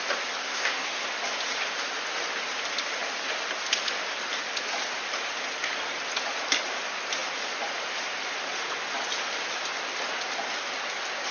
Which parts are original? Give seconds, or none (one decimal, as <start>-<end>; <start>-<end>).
0.0-0.4; 1.0-11.3